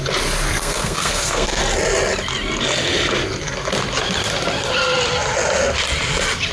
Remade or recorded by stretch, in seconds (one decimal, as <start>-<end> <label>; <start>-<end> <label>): 0.0-0.6 recorded; 0.6-1.6 remade; 1.6-6.5 recorded

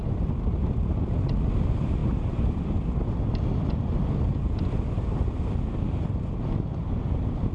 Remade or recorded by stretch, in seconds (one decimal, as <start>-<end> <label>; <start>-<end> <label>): 0.0-7.5 recorded

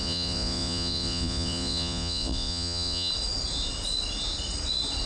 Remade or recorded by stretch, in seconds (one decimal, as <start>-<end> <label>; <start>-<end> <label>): 0.0-3.1 remade; 3.1-5.1 recorded

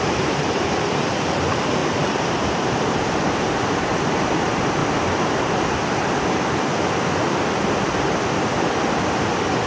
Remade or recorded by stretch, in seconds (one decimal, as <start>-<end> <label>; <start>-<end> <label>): 0.0-4.8 remade; 4.8-9.7 recorded

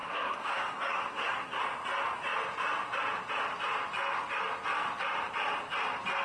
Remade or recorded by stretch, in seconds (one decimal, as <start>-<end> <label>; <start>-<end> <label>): 0.0-1.6 remade; 1.6-6.2 recorded